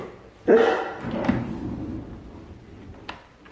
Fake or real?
real